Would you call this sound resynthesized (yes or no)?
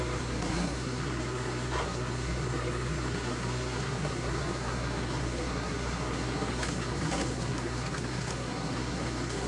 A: yes